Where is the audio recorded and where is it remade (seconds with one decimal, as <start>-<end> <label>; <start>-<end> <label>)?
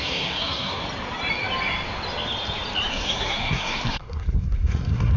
0.0-0.8 remade; 0.8-2.9 recorded; 2.9-5.2 remade